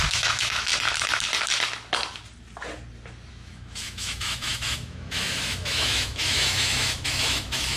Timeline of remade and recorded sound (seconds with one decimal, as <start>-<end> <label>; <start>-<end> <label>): 0.0-0.7 remade; 0.7-3.3 recorded; 3.3-7.8 remade